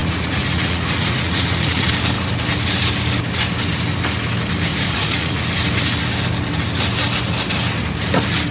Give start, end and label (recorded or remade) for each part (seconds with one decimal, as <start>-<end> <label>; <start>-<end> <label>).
0.0-1.9 remade; 1.9-4.7 recorded; 4.7-5.4 remade; 5.4-8.5 recorded